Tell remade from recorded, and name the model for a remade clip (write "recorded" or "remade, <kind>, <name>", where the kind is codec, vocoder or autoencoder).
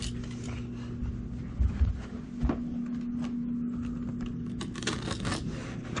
recorded